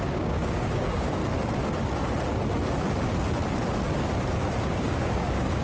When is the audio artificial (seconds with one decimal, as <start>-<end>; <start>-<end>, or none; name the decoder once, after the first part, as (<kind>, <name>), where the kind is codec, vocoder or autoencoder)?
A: 0.0-1.2 (codec, DAC); 4.6-5.6